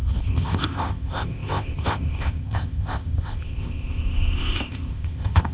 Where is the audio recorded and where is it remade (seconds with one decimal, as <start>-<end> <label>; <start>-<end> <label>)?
0.0-5.5 remade